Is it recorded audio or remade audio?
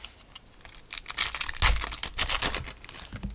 recorded